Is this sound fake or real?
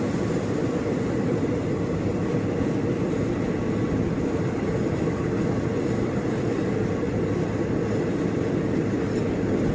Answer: real